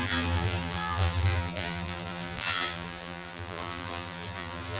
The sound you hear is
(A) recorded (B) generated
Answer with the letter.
B